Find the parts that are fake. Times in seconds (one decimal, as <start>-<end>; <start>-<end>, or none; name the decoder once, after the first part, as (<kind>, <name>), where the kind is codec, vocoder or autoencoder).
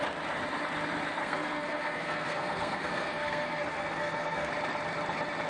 1.2-4.5 (codec, SNAC)